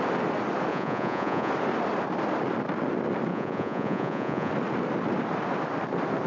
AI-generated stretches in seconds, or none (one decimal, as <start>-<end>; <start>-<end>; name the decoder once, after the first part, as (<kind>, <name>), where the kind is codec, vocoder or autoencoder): 0.7-1.5 (vocoder, Vocos); 3.3-4.5